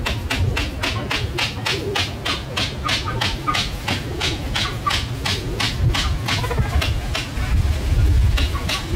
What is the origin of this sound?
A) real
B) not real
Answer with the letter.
A